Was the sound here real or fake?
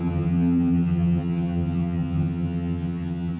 fake